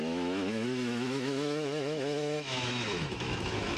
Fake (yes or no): yes